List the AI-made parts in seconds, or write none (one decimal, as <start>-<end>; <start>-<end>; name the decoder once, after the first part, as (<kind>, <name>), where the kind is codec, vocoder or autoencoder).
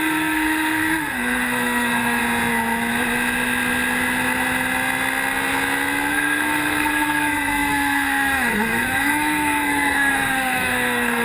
0.0-2.2 (codec, SNAC); 6.1-11.2